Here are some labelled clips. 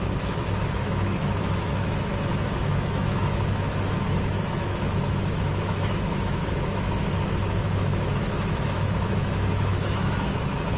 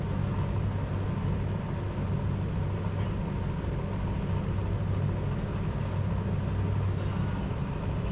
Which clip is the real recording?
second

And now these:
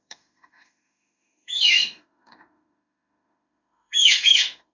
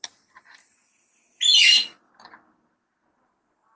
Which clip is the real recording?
second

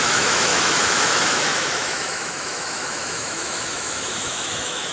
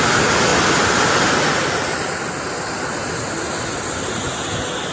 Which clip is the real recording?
second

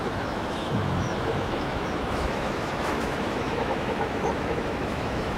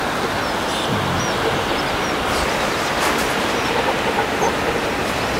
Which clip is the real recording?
second